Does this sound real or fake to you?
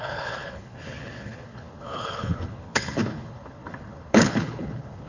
fake